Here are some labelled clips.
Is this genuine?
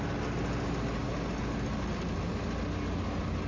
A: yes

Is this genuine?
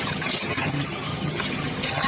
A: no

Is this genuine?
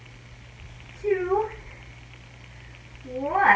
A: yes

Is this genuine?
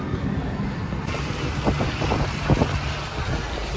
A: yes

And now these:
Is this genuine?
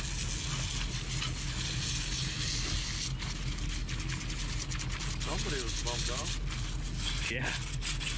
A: yes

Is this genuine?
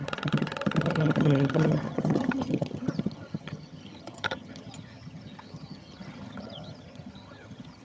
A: no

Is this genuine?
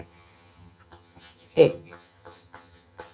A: no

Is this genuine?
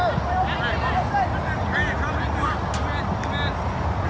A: yes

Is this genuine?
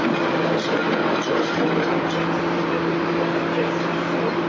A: yes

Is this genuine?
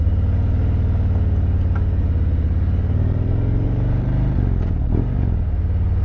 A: yes